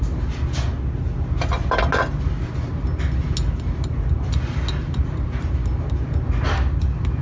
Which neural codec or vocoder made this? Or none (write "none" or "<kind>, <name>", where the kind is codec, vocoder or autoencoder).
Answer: none